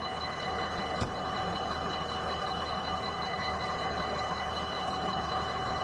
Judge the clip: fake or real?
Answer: fake